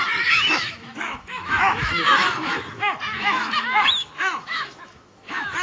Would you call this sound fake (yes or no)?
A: yes